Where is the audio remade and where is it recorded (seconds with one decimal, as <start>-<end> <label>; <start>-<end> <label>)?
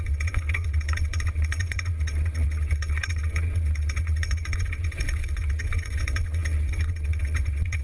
0.0-7.8 remade